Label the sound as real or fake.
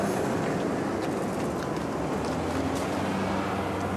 real